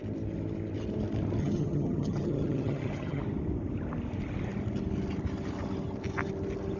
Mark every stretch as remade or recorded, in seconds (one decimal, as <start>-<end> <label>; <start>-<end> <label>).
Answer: 0.0-1.4 recorded; 1.4-3.2 remade; 3.2-6.8 recorded